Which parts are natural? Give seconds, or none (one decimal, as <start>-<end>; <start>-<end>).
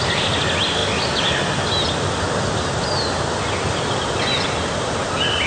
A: 0.0-5.5